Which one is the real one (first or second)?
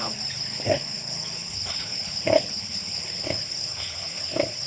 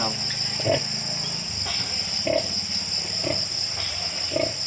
second